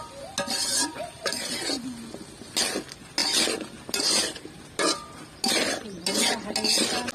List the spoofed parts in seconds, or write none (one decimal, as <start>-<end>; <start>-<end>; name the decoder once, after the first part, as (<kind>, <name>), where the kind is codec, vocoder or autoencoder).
0.9-1.7 (vocoder, BigVGAN v2)